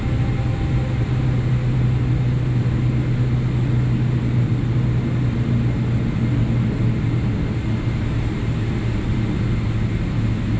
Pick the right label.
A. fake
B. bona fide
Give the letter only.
B